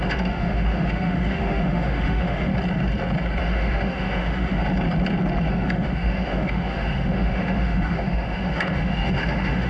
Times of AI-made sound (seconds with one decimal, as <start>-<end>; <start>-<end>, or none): 0.0-2.5; 3.4-4.6; 5.5-9.7